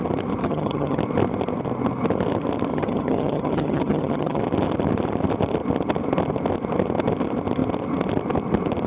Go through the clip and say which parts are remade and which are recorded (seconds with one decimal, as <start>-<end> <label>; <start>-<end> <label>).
0.0-0.4 recorded; 0.4-1.0 remade; 1.0-2.7 recorded; 2.7-4.4 remade; 4.4-8.9 recorded